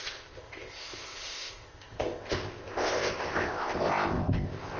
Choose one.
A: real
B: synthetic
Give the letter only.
B